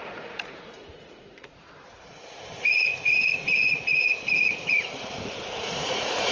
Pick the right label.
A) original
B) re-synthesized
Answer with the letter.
B